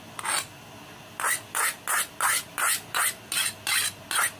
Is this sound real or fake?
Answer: real